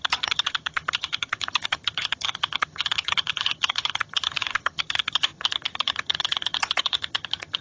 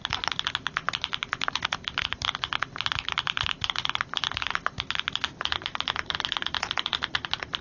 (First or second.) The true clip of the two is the second